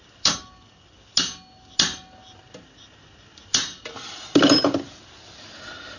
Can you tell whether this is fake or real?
real